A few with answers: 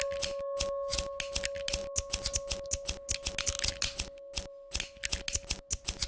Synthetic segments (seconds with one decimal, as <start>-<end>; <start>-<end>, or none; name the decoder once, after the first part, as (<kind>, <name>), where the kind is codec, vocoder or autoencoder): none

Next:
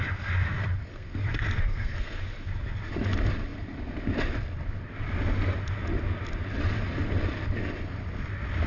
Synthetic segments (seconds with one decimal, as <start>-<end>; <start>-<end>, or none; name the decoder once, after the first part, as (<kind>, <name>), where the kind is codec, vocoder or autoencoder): 0.9-2.2 (codec, SNAC)

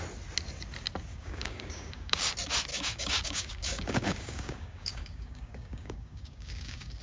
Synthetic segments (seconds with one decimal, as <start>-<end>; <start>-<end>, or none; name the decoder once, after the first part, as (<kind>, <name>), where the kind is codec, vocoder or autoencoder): 1.1-2.3 (codec, DAC); 2.7-7.0

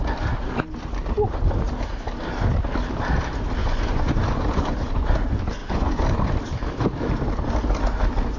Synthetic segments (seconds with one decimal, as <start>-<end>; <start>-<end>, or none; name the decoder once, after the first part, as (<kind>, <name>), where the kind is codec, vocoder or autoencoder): 3.6-5.1 (vocoder, Vocos); 5.6-6.3

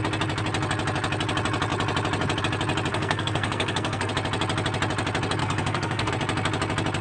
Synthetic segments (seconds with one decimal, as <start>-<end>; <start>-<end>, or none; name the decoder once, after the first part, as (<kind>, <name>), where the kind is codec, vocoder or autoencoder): 2.9-4.1 (codec, SNAC); 5.4-6.1

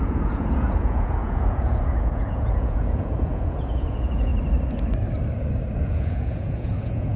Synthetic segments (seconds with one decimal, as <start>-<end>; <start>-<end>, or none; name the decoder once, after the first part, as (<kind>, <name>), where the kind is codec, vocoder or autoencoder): 0.0-4.3 (vocoder, Vocos); 5.8-7.2

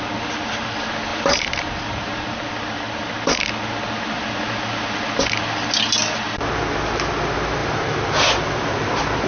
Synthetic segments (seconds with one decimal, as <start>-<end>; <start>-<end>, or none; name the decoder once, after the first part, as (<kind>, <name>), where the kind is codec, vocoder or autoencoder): 1.1-2.5 (vocoder, BigVGAN v2); 7.6-8.9

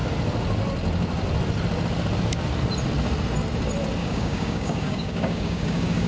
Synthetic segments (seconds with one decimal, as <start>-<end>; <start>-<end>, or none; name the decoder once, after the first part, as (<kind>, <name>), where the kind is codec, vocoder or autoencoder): 4.0-6.1 (codec, DAC)